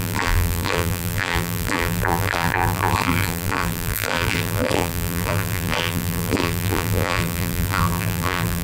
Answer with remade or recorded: remade